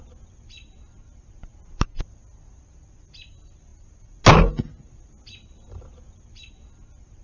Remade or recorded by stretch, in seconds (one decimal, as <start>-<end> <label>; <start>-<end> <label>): 0.0-7.2 recorded